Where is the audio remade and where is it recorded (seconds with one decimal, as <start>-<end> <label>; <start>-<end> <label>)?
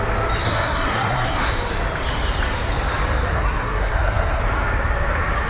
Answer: 0.0-0.4 recorded; 0.4-1.5 remade; 1.5-3.3 recorded; 3.3-4.4 remade; 4.4-5.5 recorded